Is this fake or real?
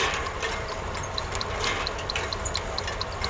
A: real